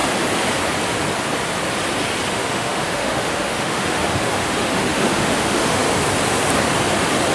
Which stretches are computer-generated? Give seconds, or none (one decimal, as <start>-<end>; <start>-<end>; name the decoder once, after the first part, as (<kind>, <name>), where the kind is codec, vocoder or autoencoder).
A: 2.3-5.8 (autoencoder, DAC-VAE)